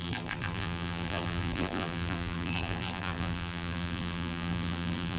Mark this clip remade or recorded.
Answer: remade